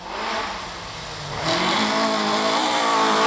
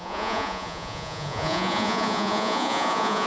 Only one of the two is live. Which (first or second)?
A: first